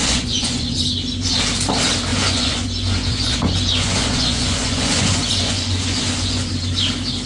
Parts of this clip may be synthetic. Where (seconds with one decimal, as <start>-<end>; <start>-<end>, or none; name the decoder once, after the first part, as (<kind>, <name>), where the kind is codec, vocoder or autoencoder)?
0.0-0.8 (vocoder, Vocos); 2.1-6.5